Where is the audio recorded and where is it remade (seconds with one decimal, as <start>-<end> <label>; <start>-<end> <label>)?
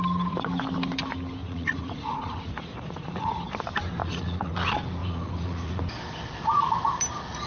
0.0-1.4 recorded; 1.4-3.5 remade; 3.5-4.0 recorded; 4.0-4.5 remade; 4.5-5.0 recorded; 5.0-5.8 remade; 5.8-7.5 recorded